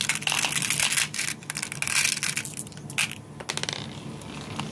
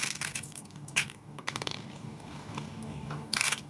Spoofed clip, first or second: second